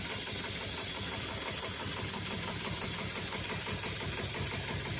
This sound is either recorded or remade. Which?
recorded